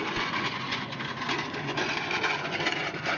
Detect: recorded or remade remade